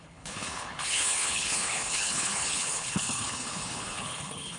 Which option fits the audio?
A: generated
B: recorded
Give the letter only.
A